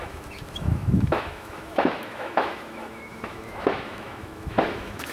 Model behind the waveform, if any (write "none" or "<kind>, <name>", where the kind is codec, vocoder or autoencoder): autoencoder, DAC-VAE